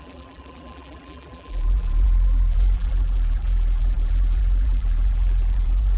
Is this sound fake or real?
fake